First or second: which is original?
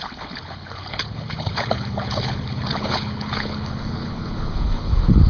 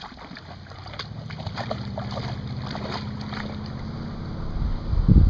second